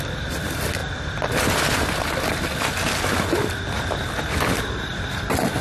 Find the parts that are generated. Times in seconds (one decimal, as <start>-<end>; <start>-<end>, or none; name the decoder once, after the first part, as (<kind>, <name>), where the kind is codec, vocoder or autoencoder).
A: none